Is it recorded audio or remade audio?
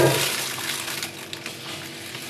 recorded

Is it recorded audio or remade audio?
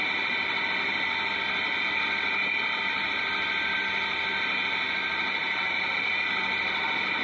recorded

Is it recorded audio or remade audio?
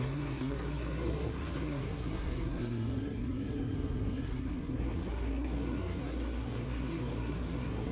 remade